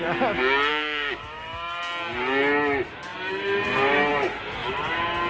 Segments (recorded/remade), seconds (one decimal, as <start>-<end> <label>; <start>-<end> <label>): 0.0-0.7 recorded; 0.7-1.8 remade; 1.8-5.3 recorded